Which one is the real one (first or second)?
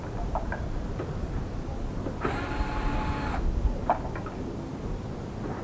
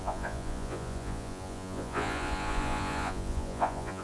first